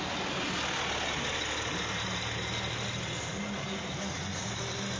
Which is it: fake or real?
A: real